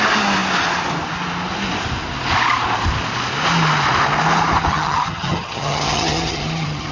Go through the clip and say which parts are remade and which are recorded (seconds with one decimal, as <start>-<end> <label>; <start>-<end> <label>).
0.0-4.7 recorded; 4.7-6.9 remade